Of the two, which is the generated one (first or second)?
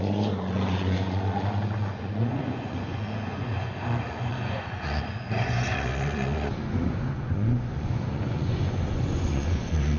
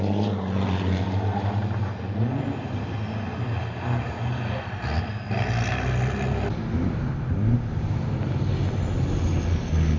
first